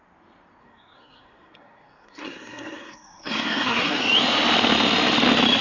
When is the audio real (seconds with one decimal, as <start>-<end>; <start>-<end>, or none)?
0.0-0.6; 4.0-5.6